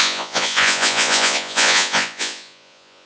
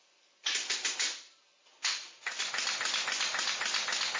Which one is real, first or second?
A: second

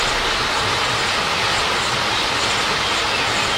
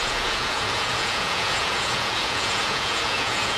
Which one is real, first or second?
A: first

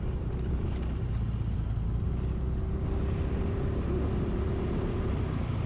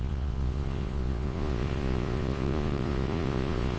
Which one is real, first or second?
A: first